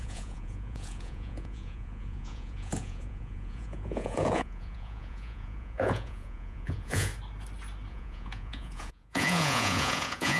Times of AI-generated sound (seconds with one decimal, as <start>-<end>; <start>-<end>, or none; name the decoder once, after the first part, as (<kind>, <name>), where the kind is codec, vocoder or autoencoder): 0.0-7.1 (vocoder, Vocos); 7.9-10.4